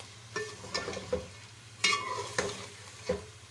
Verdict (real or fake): real